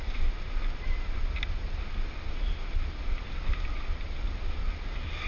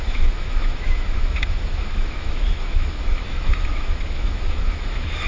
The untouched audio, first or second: first